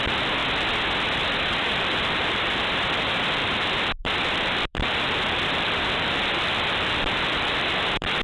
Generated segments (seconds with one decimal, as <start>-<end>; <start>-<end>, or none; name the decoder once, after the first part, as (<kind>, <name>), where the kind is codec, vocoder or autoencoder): 0.0-0.4 (vocoder, BigVGAN v2); 1.6-8.2